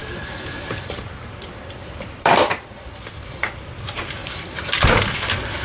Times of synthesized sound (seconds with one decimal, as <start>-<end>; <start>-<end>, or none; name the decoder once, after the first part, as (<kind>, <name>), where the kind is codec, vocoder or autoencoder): 0.0-3.4 (vocoder, BigVGAN v2); 4.2-4.8